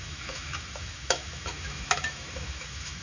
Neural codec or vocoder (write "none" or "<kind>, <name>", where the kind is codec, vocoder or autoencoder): autoencoder, DAC-VAE